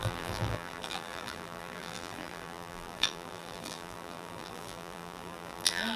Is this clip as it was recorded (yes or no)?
no